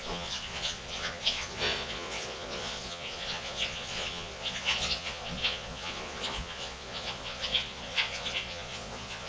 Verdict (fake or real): fake